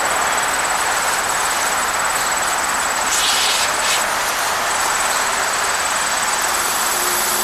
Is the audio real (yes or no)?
no